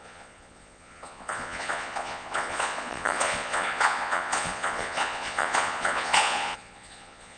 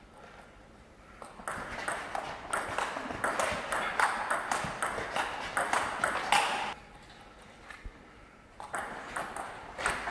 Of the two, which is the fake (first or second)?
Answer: first